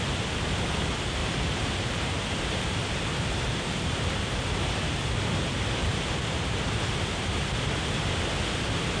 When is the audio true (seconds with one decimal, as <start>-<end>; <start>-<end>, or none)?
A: 0.0-1.2; 2.6-3.1; 4.9-5.8; 7.2-9.0